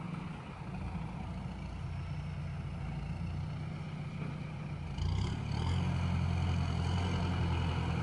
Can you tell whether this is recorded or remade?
recorded